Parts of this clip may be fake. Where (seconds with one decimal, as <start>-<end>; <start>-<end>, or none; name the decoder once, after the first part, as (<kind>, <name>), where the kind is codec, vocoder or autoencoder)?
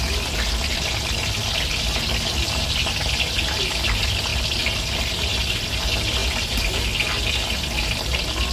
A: none